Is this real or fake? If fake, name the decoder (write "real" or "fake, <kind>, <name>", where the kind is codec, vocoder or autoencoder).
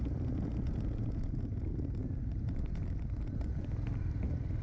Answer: real